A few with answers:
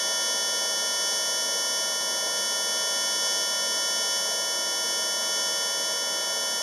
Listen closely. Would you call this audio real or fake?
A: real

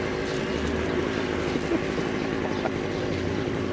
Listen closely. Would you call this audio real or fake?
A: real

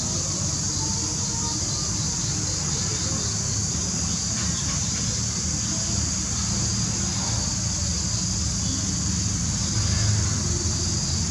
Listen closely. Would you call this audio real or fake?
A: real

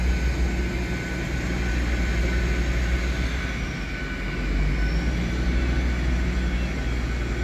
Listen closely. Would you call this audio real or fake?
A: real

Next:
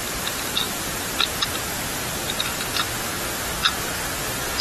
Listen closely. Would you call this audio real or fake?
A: real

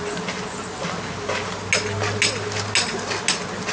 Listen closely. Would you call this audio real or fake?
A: real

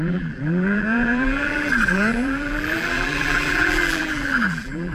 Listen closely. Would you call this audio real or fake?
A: fake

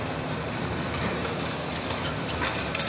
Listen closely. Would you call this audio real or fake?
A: fake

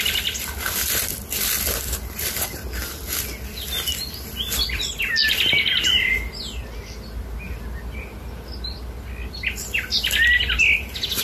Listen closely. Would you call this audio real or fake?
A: real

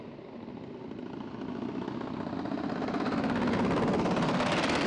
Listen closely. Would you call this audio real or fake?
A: real